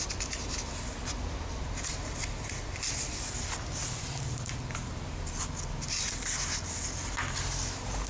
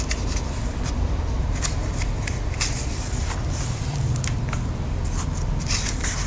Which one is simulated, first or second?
second